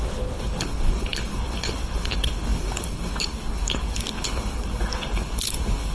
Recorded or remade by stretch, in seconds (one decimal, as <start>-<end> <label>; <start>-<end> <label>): 0.0-5.9 remade